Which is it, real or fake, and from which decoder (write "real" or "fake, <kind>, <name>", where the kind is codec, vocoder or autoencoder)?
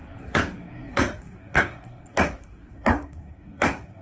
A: fake, codec, SNAC